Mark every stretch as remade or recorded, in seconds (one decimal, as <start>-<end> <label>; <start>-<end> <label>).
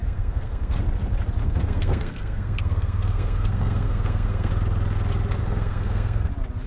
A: 0.0-0.8 remade; 0.8-1.4 recorded; 1.4-4.5 remade; 4.5-5.4 recorded; 5.4-6.3 remade; 6.3-6.7 recorded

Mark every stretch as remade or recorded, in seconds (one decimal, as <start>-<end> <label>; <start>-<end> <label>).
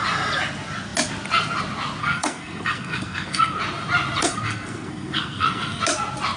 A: 0.0-2.0 recorded; 2.0-3.6 remade; 3.6-4.2 recorded; 4.2-5.8 remade; 5.8-6.4 recorded